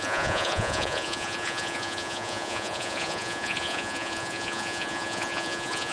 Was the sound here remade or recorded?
remade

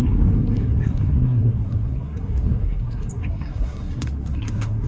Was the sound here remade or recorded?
remade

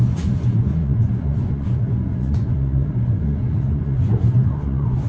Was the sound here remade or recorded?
remade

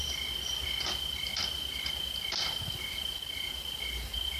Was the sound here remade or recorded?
recorded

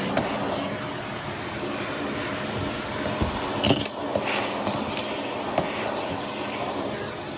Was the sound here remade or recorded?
recorded